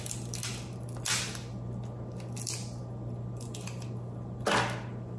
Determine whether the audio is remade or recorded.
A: recorded